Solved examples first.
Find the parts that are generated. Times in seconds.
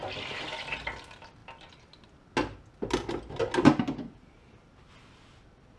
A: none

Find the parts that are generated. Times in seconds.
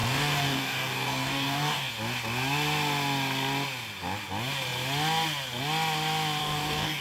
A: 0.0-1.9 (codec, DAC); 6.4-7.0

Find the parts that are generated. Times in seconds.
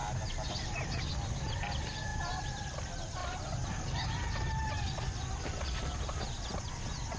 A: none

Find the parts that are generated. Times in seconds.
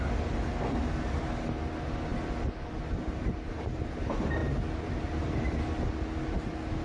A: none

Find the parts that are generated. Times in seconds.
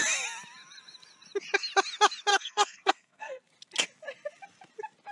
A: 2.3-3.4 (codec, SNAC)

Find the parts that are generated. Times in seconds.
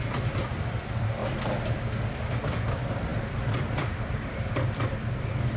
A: 0.0-1.2 (vocoder, BigVGAN v2); 2.4-5.6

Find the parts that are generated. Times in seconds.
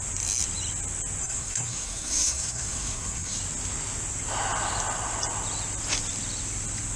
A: 1.2-3.4 (codec, SNAC)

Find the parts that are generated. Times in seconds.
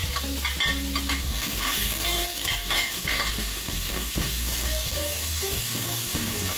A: 1.1-6.6 (codec, DAC)